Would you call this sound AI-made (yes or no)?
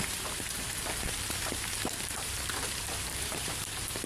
yes